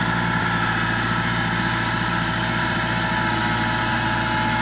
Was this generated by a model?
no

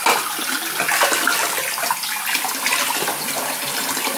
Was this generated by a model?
no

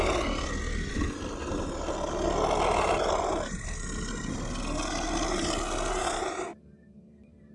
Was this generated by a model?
no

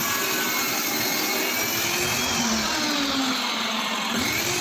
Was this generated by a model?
no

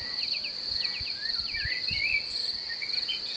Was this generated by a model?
no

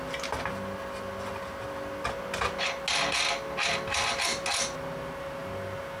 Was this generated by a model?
no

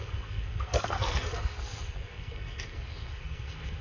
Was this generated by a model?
yes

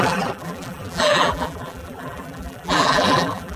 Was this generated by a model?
yes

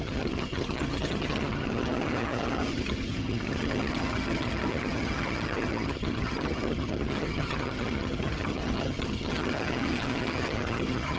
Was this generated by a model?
yes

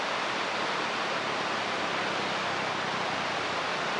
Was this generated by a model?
no